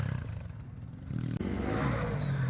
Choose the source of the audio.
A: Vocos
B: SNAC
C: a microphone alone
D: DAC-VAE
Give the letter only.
C